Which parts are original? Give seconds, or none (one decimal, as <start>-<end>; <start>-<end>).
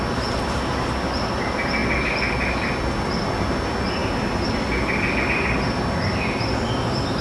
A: 0.0-7.2